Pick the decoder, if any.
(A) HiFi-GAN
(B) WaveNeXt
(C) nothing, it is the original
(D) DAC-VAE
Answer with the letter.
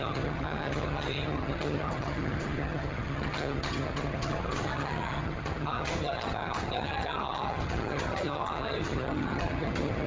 A